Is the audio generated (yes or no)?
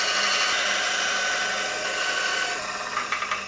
no